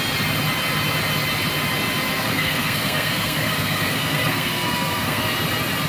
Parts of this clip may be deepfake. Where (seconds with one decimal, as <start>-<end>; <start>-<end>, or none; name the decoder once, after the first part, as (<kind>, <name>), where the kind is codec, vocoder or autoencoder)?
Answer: 2.1-5.2 (codec, SNAC)